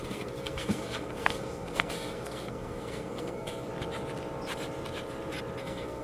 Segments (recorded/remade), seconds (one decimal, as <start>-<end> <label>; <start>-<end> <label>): 0.0-3.7 remade; 3.7-5.6 recorded; 5.6-6.0 remade